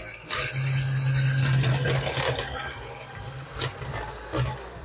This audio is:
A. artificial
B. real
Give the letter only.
B